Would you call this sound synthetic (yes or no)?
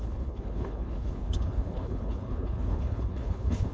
yes